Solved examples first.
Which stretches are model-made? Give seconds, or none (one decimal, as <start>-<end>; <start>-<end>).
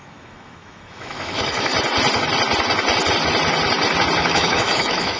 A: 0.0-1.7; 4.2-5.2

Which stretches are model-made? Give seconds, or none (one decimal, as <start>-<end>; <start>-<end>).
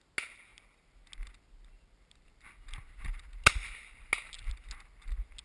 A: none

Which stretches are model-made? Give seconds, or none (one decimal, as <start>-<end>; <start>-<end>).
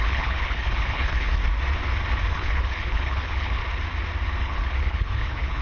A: 0.0-1.4; 2.3-3.6; 4.4-5.6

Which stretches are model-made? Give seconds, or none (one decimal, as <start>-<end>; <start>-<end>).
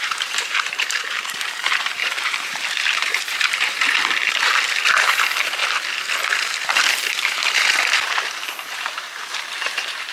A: 0.0-5.6; 7.1-10.1